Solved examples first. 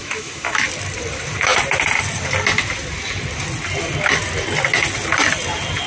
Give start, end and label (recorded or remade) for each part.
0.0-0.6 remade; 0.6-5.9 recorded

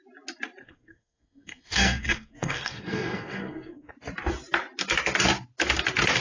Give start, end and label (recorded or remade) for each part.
0.0-0.6 recorded; 0.6-3.9 remade; 3.9-6.2 recorded

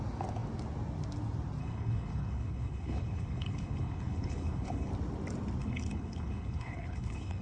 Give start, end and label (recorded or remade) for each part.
0.0-1.6 recorded; 1.6-4.9 remade; 4.9-5.6 recorded; 5.6-7.4 remade

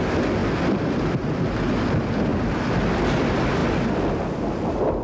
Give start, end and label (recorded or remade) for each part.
0.0-5.0 recorded